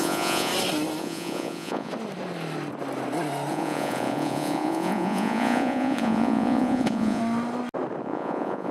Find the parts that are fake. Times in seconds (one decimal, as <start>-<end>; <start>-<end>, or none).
0.0-0.5; 1.0-1.9; 3.5-7.2; 8.0-8.7